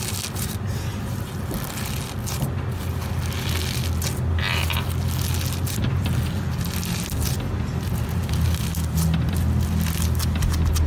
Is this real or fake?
real